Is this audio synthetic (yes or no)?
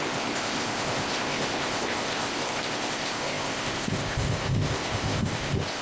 yes